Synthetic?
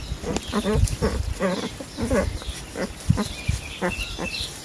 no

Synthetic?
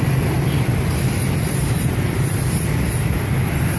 yes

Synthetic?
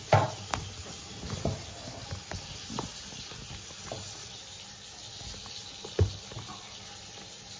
no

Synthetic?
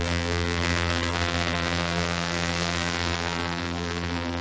yes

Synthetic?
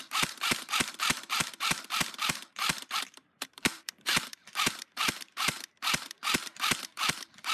yes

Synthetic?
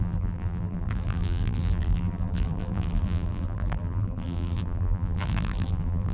yes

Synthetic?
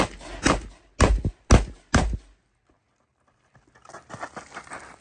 no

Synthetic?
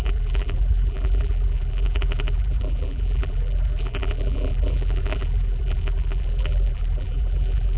yes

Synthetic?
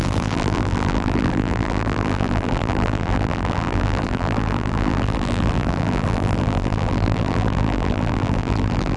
yes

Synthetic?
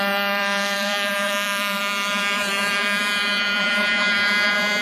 yes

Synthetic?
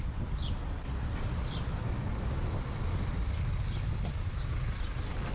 yes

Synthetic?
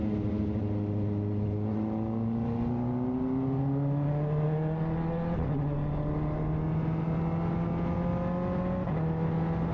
no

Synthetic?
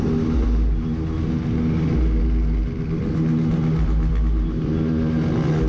no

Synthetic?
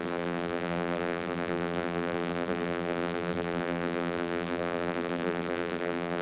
yes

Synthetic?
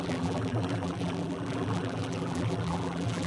yes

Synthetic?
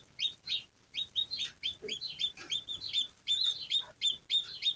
yes